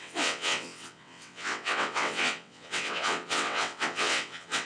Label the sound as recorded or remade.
remade